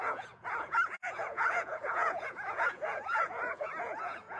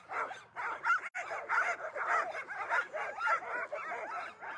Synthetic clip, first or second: first